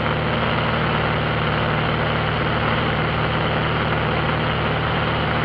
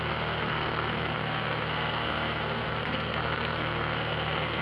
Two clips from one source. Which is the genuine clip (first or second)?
first